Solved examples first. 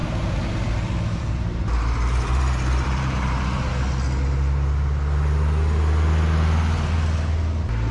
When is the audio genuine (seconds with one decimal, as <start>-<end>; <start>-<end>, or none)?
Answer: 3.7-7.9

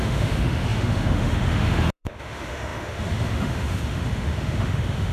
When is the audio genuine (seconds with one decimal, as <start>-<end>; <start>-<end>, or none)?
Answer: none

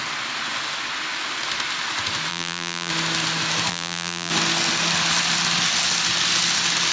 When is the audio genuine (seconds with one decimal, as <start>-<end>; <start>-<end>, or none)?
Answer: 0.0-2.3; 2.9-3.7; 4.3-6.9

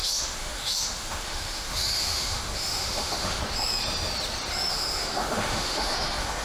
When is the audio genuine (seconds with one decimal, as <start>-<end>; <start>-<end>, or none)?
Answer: 3.4-4.7

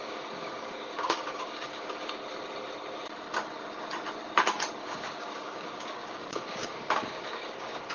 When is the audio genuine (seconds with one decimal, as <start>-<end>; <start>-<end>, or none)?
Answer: 2.2-4.8

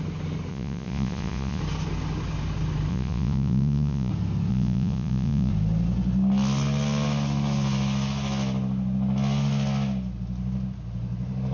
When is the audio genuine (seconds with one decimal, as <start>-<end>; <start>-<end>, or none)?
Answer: 0.0-0.5; 1.6-2.9; 4.1-4.5; 5.5-11.5

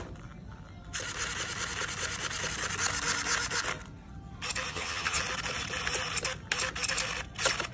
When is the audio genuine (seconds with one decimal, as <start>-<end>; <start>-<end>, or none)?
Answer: 0.0-4.7; 5.2-7.7

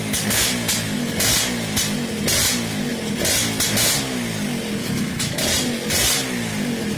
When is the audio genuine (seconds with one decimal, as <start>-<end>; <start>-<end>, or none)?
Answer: 0.0-4.8; 5.4-7.0